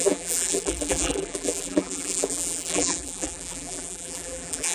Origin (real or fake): fake